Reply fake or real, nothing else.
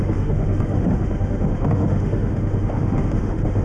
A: fake